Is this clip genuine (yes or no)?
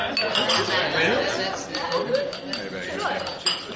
yes